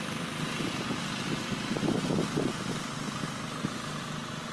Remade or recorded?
recorded